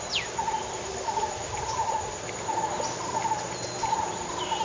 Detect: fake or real real